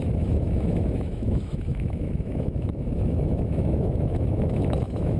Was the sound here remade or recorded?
remade